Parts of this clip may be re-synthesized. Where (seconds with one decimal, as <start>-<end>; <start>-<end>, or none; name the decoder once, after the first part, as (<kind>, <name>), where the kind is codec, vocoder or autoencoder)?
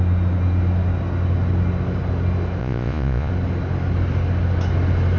2.6-3.3 (vocoder, Vocos)